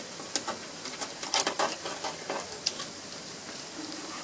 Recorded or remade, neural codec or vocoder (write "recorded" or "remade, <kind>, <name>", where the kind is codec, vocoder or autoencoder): recorded